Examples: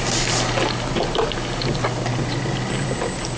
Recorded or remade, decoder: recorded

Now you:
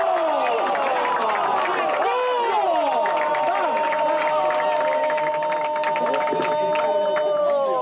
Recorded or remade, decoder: recorded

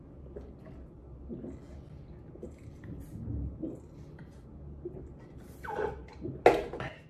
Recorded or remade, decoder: recorded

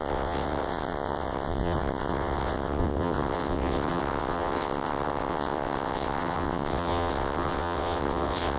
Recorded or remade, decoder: remade, vocoder, WaveNeXt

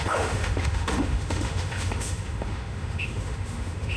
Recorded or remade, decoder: remade, autoencoder, DAC-VAE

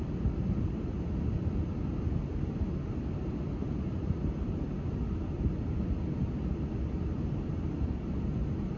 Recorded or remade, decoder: recorded